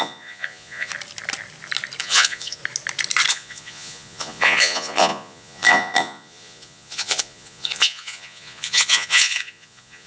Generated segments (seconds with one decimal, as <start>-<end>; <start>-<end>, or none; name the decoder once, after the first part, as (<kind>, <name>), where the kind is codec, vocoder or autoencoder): 0.0-0.9 (vocoder, Vocos); 2.0-2.6; 3.3-10.1